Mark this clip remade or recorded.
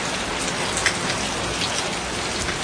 recorded